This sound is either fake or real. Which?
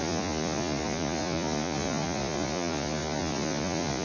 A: fake